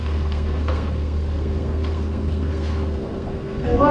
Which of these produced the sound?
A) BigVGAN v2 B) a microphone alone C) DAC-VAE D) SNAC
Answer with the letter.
D